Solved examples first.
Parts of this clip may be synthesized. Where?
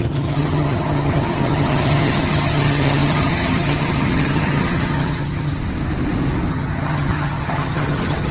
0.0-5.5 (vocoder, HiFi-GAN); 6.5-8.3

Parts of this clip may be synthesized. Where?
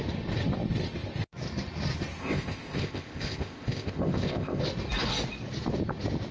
2.2-4.6 (codec, ZipCodec)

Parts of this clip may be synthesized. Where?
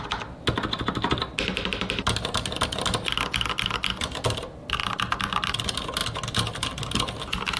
4.8-5.5 (vocoder, BigVGAN v2)